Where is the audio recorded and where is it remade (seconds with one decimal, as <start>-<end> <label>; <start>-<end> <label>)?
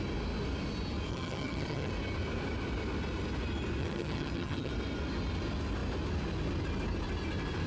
0.0-1.1 recorded; 1.1-1.9 remade; 1.9-3.8 recorded; 3.8-4.7 remade; 4.7-7.7 recorded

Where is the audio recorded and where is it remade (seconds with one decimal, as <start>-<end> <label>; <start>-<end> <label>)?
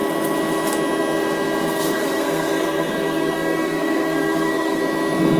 0.0-1.6 recorded; 1.6-4.8 remade; 4.8-5.4 recorded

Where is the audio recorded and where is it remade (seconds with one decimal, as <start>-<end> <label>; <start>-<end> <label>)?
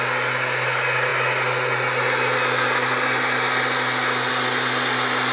0.0-5.3 recorded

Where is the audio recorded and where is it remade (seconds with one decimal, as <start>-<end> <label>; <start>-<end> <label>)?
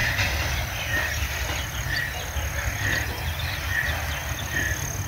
0.0-5.1 recorded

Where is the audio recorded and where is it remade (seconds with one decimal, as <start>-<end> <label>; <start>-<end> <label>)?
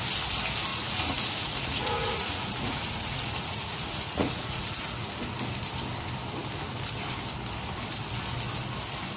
0.0-0.7 recorded; 0.7-5.1 remade; 5.1-9.2 recorded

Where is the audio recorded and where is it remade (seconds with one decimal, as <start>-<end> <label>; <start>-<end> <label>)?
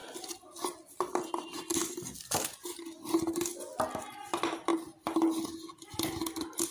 0.0-6.7 recorded